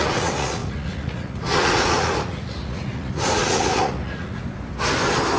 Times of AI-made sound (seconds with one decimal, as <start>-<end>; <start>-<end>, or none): 0.0-4.4